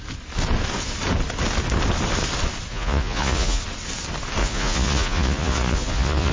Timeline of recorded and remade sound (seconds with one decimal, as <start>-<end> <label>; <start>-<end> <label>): 0.0-2.7 recorded; 2.7-3.6 remade; 3.6-4.4 recorded; 4.4-6.3 remade